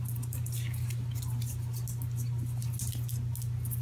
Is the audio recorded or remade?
recorded